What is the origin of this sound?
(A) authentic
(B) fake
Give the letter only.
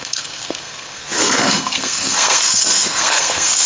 B